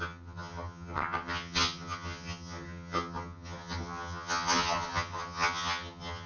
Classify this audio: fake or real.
fake